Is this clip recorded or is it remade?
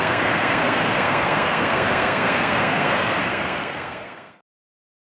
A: remade